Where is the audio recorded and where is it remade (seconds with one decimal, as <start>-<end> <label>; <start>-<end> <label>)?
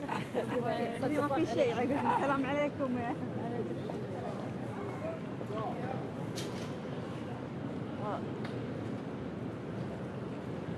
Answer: 0.0-0.6 recorded; 0.6-2.1 remade; 2.1-10.8 recorded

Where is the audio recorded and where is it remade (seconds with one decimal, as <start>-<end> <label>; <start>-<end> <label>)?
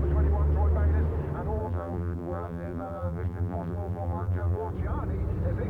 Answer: 0.0-1.6 recorded; 1.6-4.7 remade; 4.7-5.7 recorded